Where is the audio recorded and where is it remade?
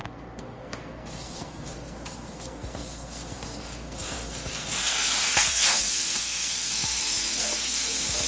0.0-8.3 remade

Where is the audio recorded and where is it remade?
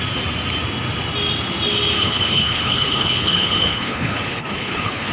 0.0-2.0 recorded; 2.0-5.1 remade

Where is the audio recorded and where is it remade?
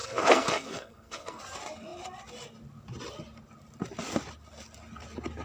0.0-1.4 remade; 1.4-5.4 recorded